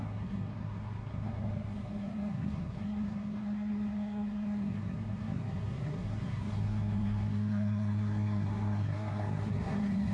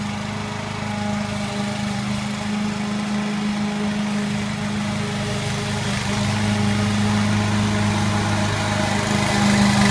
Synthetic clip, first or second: first